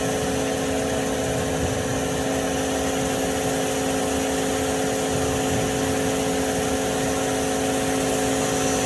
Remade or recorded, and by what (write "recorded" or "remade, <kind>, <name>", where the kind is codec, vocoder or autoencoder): recorded